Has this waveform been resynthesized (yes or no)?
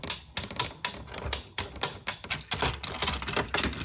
no